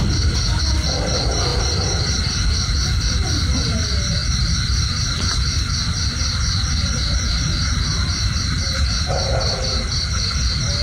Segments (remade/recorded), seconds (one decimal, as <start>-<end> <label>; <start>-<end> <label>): 0.0-10.8 recorded